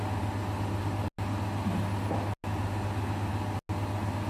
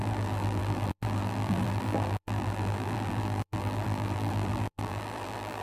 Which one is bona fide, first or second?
first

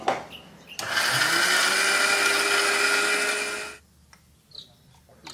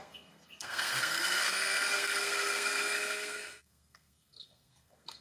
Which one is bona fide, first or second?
first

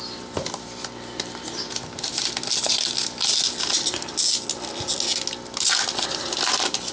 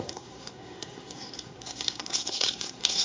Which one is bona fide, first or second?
first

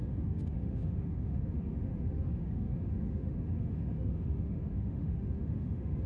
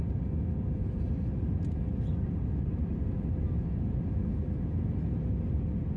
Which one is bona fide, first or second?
second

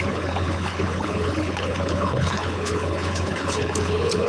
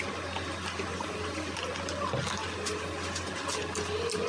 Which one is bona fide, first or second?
second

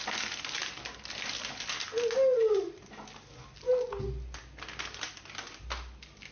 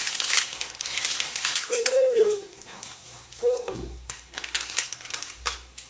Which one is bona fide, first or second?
first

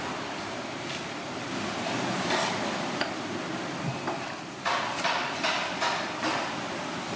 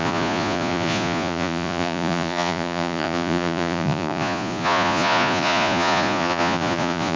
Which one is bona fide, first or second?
first